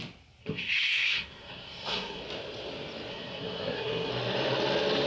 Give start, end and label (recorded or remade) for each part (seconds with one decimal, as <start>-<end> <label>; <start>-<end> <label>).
0.0-0.4 recorded; 0.4-2.2 remade; 2.2-3.1 recorded; 3.1-4.1 remade; 4.1-5.1 recorded